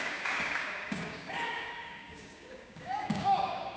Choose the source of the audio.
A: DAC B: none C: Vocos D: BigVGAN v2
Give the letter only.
A